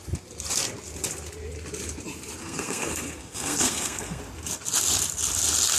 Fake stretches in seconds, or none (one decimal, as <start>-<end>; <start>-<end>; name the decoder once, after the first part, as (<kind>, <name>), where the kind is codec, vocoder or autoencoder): 2.4-4.2 (codec, SNAC)